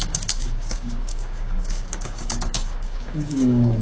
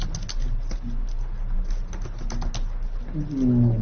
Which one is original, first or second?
second